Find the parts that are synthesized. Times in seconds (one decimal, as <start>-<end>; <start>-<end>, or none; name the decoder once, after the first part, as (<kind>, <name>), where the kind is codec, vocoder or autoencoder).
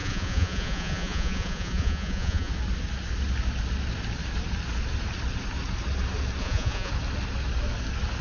0.0-2.5 (vocoder, Vocos); 6.4-6.9